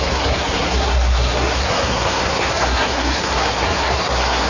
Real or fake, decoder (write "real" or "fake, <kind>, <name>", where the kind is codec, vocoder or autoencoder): fake, codec, SNAC